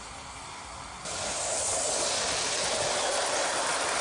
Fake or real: real